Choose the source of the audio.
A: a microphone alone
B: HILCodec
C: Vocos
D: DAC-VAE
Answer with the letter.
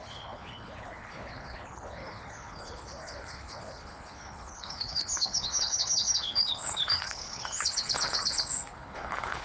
B